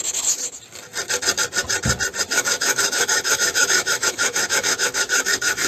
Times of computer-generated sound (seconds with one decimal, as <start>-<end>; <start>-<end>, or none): 2.3-5.7